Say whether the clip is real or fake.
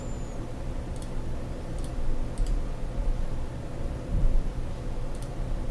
real